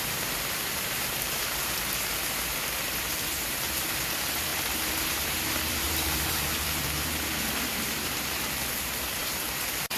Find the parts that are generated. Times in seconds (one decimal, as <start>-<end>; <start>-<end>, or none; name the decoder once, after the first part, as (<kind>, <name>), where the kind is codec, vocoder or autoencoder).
0.0-10.0 (vocoder, BigVGAN v2)